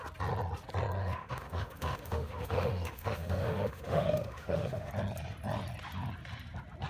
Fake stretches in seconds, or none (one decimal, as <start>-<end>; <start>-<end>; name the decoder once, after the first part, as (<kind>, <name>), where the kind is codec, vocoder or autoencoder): 1.0-4.9 (autoencoder, DAC-VAE)